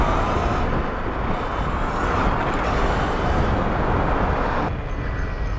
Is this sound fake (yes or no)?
no